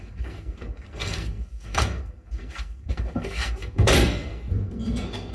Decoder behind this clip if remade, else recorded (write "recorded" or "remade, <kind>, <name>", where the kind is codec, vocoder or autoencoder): remade, codec, SNAC